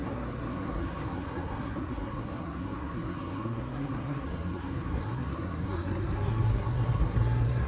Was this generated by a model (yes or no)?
yes